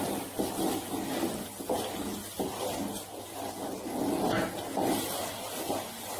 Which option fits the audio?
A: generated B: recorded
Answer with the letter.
B